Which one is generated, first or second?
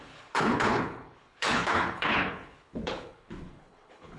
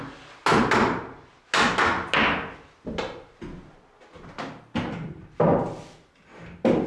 first